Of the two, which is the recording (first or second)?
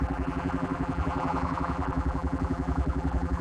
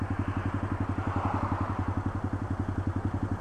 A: second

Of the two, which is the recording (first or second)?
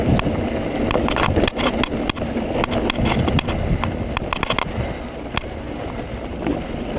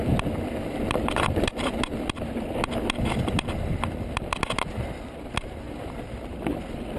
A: first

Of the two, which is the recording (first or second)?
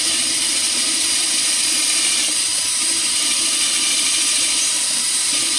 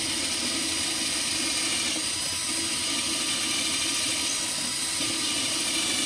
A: second